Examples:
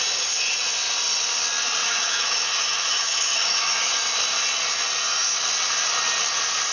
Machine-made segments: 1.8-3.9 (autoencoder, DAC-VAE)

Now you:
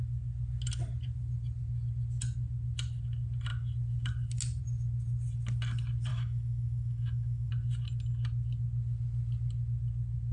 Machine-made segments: 6.1-7.5 (autoencoder, DAC-VAE)

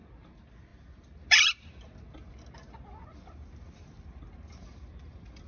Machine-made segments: none

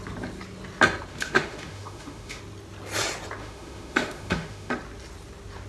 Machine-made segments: 1.1-2.4 (autoencoder, DAC-VAE); 3.4-4.7

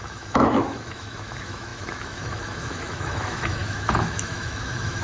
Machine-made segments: 0.0-5.0 (autoencoder, DAC-VAE)

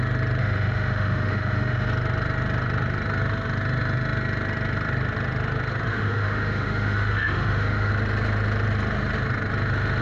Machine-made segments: 0.4-1.9 (autoencoder, DAC-VAE); 5.9-7.9